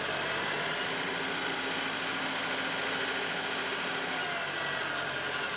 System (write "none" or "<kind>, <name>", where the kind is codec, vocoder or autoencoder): none